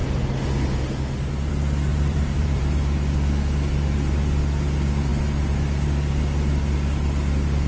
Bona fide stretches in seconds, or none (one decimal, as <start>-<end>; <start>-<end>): 0.0-1.9; 2.6-7.7